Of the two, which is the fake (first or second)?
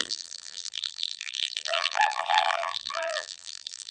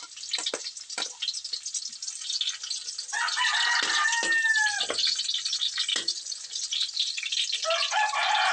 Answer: first